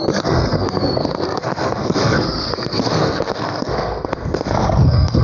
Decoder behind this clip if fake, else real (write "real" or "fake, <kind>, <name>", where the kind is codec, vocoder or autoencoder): fake, codec, SNAC